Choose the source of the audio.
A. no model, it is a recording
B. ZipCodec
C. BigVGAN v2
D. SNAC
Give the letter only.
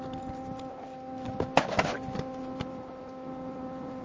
A